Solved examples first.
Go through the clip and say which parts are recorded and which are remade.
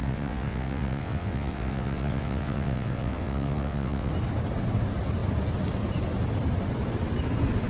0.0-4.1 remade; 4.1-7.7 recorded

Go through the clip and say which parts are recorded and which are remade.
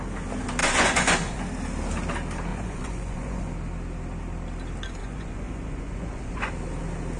0.0-0.6 recorded; 0.6-1.4 remade; 1.4-2.5 recorded; 2.5-3.5 remade; 3.5-5.0 recorded; 5.0-6.5 remade; 6.5-7.2 recorded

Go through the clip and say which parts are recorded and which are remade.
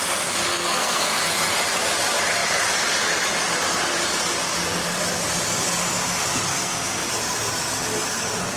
0.0-0.5 recorded; 0.5-1.3 remade; 1.3-6.5 recorded; 6.5-7.1 remade; 7.1-8.6 recorded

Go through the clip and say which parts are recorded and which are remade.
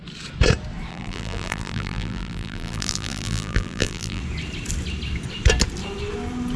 0.0-0.9 recorded; 0.9-4.2 remade; 4.2-6.6 recorded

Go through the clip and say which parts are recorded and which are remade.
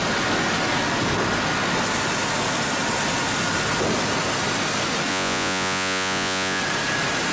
0.0-5.1 recorded; 5.1-6.6 remade; 6.6-7.3 recorded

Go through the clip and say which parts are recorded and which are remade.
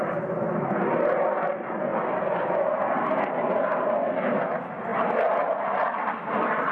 0.0-6.7 recorded